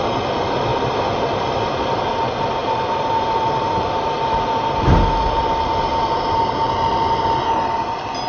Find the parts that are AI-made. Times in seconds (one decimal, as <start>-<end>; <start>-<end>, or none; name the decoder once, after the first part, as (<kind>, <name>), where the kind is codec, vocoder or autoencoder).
0.7-2.1 (vocoder, BigVGAN v2); 2.6-4.8